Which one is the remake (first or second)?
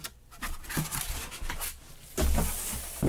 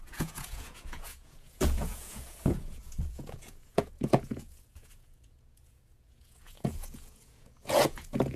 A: second